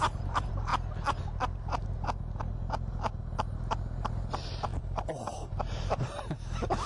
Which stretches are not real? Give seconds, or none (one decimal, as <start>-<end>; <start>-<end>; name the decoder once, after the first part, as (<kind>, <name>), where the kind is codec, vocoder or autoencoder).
0.0-0.7 (vocoder, BigVGAN v2); 4.3-6.9